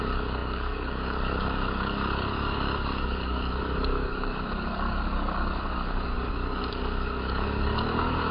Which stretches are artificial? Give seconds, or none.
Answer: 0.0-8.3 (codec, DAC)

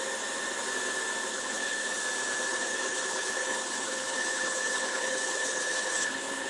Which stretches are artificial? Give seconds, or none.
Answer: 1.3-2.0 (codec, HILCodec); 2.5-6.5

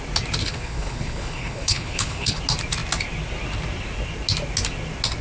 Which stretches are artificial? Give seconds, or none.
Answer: 0.4-2.4 (codec, HILCodec)